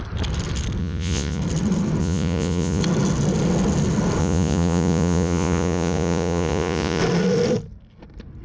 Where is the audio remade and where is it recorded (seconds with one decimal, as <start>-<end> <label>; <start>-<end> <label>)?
0.0-0.8 recorded; 0.8-1.4 remade; 1.4-2.0 recorded; 2.0-2.8 remade; 2.8-4.2 recorded; 4.2-7.0 remade; 7.0-8.4 recorded